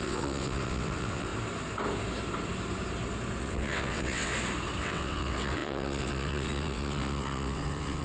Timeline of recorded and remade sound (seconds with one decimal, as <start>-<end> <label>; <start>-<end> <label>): 0.0-1.3 remade; 1.3-3.4 recorded; 3.4-4.3 remade; 4.3-4.8 recorded; 4.8-8.0 remade

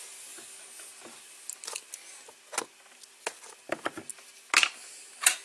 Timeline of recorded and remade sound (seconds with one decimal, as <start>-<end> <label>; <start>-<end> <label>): 0.0-5.4 recorded

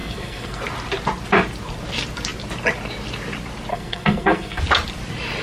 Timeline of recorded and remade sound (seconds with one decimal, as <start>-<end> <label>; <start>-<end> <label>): 0.0-0.6 remade; 0.6-3.7 recorded; 3.7-4.6 remade; 4.6-5.4 recorded

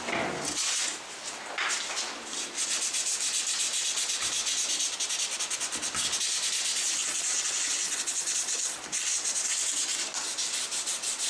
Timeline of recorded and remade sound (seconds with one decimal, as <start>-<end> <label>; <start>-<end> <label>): 0.0-7.0 recorded; 7.0-8.8 remade; 8.8-11.3 recorded

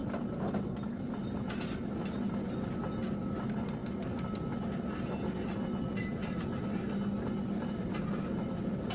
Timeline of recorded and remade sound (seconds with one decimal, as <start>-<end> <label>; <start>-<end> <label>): 0.0-8.9 recorded

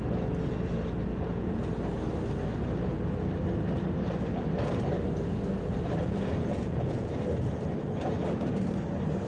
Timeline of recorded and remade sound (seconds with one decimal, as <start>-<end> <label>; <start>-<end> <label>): 0.0-1.1 recorded; 1.1-1.6 remade; 1.6-6.0 recorded; 6.0-7.1 remade; 7.1-9.3 recorded